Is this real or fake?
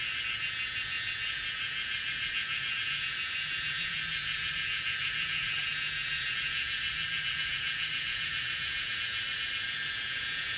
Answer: fake